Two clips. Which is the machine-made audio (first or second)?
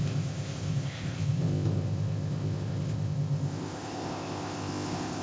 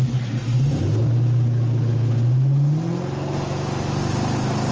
first